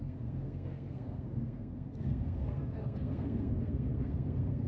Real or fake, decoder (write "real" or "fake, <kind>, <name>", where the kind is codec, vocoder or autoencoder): fake, codec, SNAC